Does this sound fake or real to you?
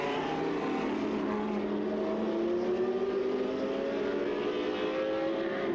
real